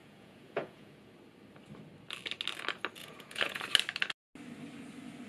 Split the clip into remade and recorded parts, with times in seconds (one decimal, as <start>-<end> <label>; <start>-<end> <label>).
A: 0.0-1.0 remade; 1.0-3.0 recorded; 3.0-3.6 remade; 3.6-5.3 recorded